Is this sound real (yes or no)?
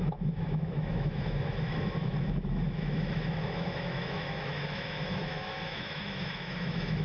no